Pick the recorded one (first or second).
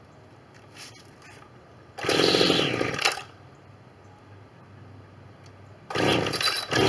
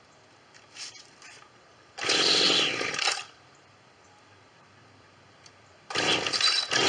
first